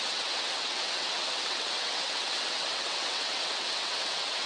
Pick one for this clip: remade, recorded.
remade